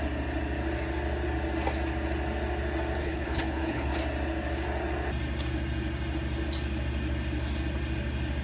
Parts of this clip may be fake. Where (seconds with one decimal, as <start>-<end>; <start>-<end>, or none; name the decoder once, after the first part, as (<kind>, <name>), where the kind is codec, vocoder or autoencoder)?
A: 3.0-3.9 (codec, HILCodec)